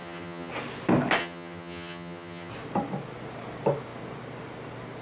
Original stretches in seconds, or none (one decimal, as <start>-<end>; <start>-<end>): 0.5-1.2; 2.5-5.0